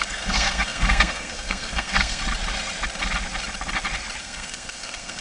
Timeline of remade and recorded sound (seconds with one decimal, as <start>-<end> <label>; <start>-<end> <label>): 0.0-2.2 remade; 2.2-4.2 recorded; 4.2-5.2 remade